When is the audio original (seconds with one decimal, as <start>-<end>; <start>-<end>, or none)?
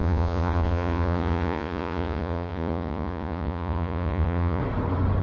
4.6-5.2